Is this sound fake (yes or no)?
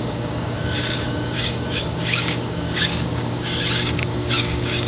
yes